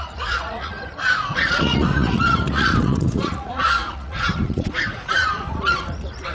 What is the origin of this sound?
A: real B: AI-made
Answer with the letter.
B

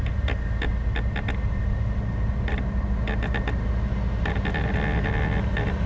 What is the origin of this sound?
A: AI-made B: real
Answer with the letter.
B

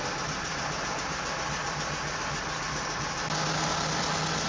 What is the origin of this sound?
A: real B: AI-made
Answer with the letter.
A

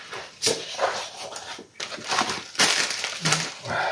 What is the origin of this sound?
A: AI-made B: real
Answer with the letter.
B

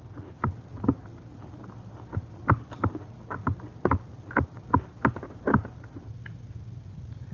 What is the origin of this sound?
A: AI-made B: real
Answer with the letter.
B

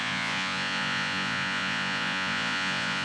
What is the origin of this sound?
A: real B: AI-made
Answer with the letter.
B